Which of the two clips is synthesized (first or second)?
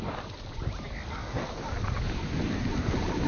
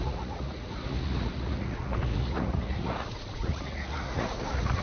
second